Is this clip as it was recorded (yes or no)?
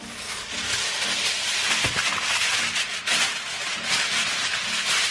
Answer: yes